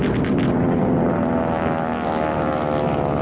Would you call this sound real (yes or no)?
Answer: yes